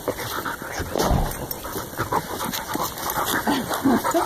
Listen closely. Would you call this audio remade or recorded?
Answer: recorded